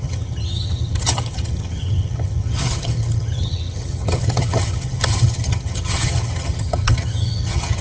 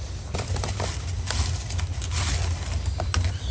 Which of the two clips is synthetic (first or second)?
first